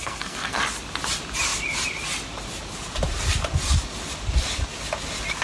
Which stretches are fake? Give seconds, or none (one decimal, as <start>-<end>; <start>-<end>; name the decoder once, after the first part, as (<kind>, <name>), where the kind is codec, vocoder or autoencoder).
0.0-0.6 (codec, SNAC)